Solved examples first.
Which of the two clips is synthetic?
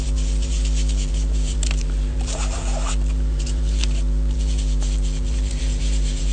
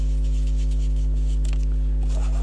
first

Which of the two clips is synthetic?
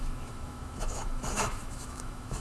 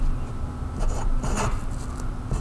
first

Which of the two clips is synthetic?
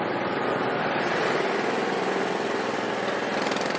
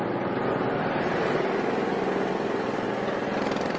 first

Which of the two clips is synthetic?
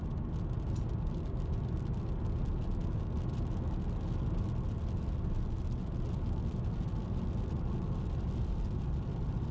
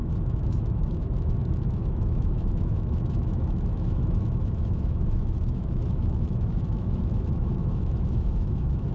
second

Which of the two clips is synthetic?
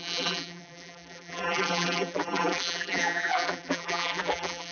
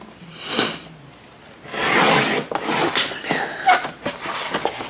first